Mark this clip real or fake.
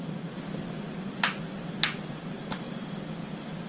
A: real